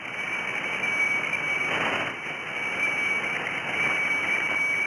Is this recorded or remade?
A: recorded